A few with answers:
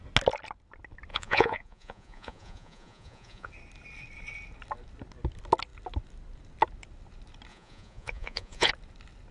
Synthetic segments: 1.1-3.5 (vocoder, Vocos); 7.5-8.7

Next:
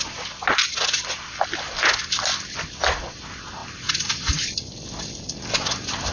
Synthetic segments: none

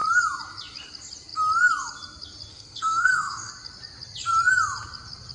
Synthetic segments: 2.5-3.5 (codec, SNAC)

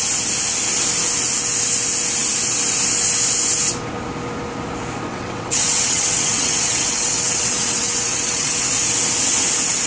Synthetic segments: 5.1-8.6 (vocoder, WaveNeXt)

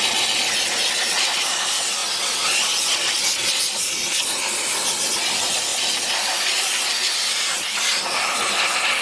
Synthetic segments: none

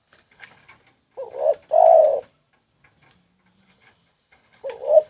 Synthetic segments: 0.0-0.6 (codec, HILCodec); 3.7-5.1